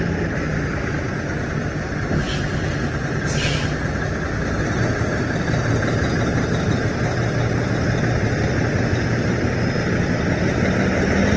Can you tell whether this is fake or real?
real